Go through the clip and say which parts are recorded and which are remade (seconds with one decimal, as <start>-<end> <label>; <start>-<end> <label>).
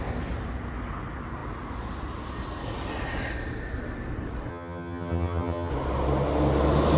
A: 0.0-4.5 recorded; 4.5-5.7 remade; 5.7-7.0 recorded